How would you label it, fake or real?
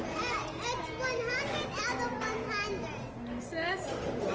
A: real